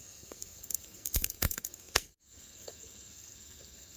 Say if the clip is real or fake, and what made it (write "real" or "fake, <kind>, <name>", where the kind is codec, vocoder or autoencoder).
fake, codec, SNAC